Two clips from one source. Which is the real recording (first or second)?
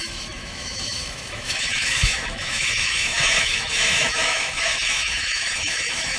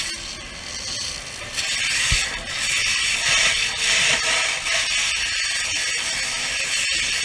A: second